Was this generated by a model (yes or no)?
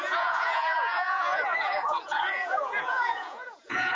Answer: yes